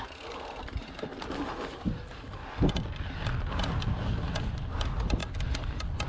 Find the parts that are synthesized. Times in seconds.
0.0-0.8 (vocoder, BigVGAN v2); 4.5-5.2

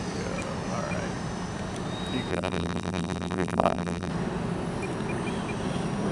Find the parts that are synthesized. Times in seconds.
2.3-4.1 (vocoder, BigVGAN v2)

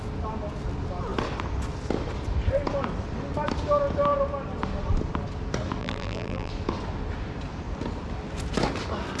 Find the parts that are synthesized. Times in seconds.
5.8-6.5 (vocoder, BigVGAN v2)